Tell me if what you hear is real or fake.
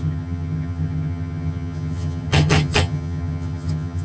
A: fake